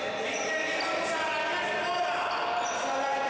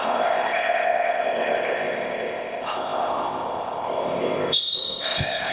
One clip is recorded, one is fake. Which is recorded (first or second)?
first